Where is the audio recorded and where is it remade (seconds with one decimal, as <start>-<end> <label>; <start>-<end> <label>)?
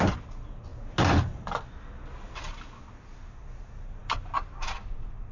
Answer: 0.0-5.3 recorded